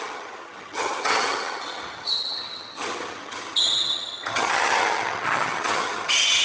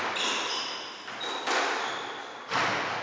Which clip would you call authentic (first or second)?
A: second